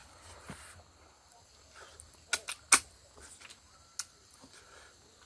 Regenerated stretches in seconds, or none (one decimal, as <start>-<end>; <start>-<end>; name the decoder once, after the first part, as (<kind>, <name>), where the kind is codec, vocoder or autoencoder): none

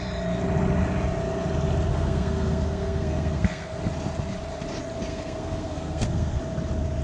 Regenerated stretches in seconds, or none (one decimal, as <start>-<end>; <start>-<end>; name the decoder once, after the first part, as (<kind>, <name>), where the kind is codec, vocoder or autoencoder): 1.9-3.8 (codec, SNAC); 5.1-6.4

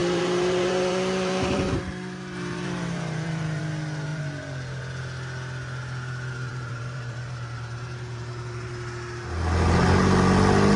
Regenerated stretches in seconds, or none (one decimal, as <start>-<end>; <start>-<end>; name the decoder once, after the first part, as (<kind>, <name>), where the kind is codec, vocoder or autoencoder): 0.0-3.6 (vocoder, BigVGAN v2); 4.1-4.8; 6.5-8.7

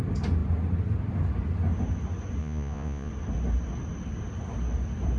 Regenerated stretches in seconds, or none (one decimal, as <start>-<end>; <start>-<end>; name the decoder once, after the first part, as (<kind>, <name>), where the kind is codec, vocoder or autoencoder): 2.4-3.1 (vocoder, Vocos)

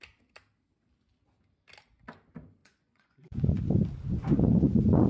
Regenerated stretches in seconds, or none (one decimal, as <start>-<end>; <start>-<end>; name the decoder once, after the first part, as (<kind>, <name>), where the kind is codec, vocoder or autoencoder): 2.6-3.6 (vocoder, Vocos); 4.3-5.1

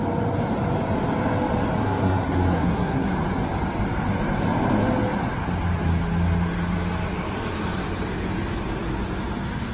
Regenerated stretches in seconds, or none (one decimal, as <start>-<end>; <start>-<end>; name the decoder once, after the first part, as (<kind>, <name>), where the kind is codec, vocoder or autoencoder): 1.8-3.1 (codec, SNAC)

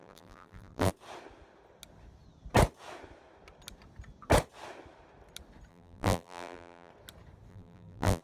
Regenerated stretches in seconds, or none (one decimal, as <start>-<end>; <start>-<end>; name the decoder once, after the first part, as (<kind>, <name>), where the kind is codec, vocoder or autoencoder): 0.0-0.9 (vocoder, BigVGAN v2); 5.7-6.9; 7.5-8.2

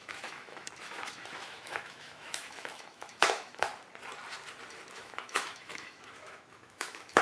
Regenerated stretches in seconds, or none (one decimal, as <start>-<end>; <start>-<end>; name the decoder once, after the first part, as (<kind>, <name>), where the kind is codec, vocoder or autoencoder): 0.0-3.7 (autoencoder, DAC-VAE); 4.9-7.2